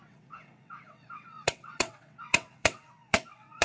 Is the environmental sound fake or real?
fake